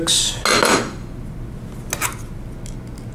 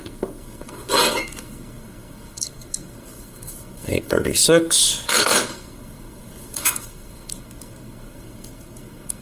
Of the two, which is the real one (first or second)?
first